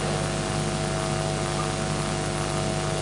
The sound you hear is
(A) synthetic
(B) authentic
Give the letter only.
B